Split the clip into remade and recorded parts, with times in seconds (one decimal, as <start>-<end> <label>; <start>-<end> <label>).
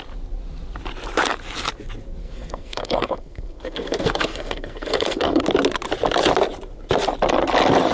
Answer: 0.0-2.2 recorded; 2.2-5.4 remade; 5.4-7.9 recorded